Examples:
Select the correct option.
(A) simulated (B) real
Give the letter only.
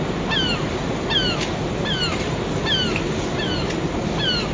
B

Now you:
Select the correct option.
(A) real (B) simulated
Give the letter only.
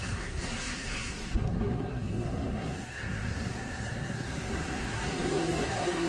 B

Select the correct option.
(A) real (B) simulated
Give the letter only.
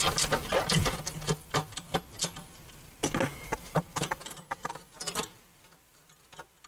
A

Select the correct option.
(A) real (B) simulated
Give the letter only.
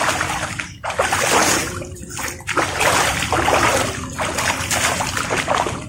A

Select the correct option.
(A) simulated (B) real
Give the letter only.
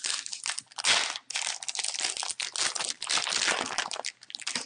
B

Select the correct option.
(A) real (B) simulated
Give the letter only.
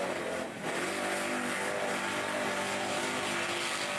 A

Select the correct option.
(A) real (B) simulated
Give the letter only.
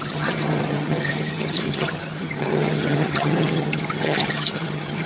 B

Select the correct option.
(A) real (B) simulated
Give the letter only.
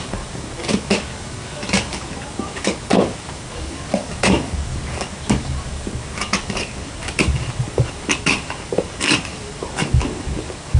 B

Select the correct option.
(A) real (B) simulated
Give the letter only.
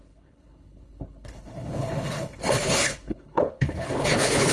B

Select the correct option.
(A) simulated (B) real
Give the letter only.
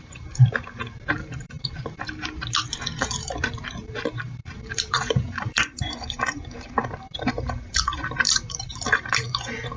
A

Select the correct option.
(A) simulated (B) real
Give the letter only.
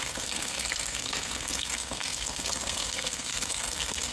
A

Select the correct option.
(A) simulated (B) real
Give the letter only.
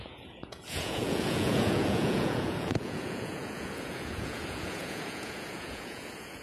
A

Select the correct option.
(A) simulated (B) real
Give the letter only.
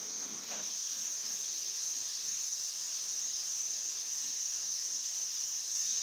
A